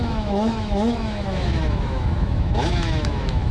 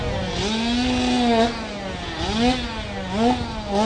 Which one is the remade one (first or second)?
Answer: first